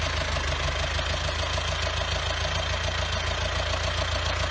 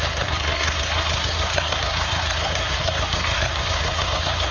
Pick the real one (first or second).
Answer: first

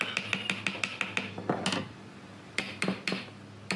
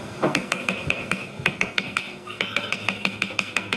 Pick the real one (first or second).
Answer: first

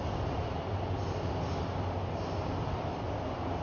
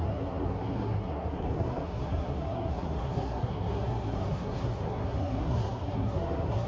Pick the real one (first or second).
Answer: first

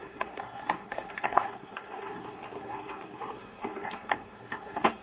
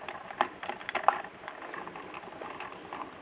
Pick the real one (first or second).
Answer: second